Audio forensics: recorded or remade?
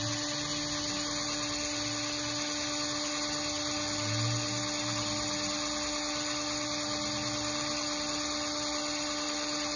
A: recorded